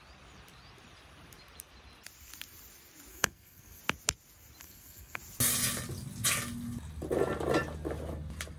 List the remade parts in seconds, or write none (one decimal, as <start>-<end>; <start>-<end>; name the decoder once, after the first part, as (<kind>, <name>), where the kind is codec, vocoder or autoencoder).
3.1-3.8 (codec, SNAC); 4.6-5.2